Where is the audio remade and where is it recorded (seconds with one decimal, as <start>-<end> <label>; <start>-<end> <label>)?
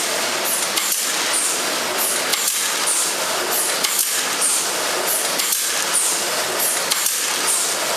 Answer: 0.0-8.0 recorded